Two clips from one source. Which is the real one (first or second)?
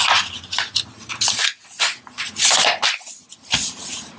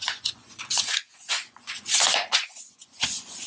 first